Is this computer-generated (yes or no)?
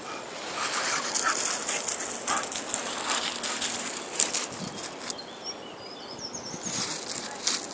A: no